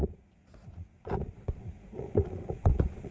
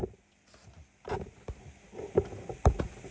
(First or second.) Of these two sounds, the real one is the second